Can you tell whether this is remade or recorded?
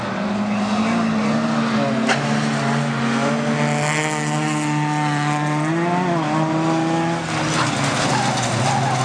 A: recorded